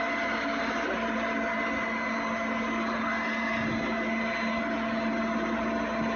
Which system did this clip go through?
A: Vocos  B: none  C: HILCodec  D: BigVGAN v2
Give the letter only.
D